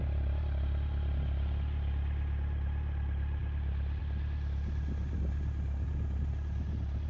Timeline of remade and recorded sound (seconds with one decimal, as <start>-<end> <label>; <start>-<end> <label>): 0.0-7.1 recorded

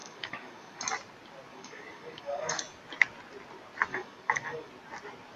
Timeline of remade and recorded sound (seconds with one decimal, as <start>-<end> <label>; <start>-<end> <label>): 0.0-0.8 remade; 0.8-1.5 recorded; 1.5-2.6 remade; 2.6-3.9 recorded; 3.9-4.7 remade; 4.7-5.4 recorded

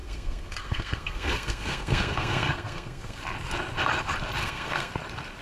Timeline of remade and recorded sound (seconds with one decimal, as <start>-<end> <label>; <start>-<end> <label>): 0.0-3.2 remade; 3.2-4.4 recorded; 4.4-4.9 remade; 4.9-5.4 recorded

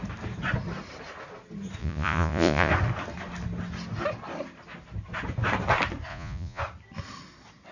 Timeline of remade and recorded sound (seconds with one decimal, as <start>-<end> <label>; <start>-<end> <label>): 0.0-1.8 recorded; 1.8-2.7 remade; 2.7-6.1 recorded; 6.1-6.6 remade; 6.6-7.7 recorded

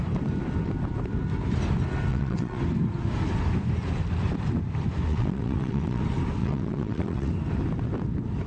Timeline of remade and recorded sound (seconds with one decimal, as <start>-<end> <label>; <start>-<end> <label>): 0.0-2.1 recorded; 2.1-2.6 remade; 2.6-5.1 recorded; 5.1-6.0 remade; 6.0-6.4 recorded; 6.4-7.3 remade; 7.3-8.5 recorded

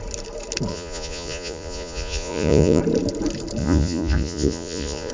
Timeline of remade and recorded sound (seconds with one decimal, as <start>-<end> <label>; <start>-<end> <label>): 0.0-0.7 recorded; 0.7-2.8 remade; 2.8-3.6 recorded; 3.6-5.1 remade